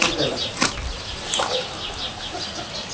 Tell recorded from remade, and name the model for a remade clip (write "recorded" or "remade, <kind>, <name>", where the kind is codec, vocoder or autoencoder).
recorded